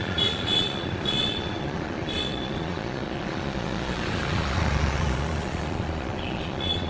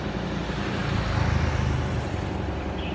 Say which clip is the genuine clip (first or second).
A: second